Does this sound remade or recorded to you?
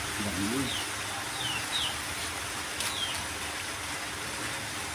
recorded